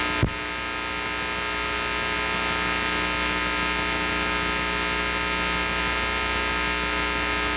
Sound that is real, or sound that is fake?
real